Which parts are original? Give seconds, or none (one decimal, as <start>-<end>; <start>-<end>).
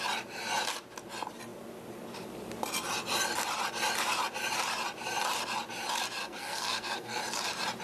0.0-6.2; 7.2-7.8